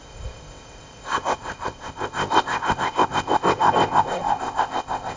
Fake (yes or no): yes